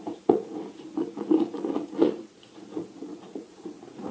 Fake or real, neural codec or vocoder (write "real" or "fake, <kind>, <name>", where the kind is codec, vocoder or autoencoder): fake, vocoder, Vocos